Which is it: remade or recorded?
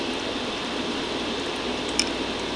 remade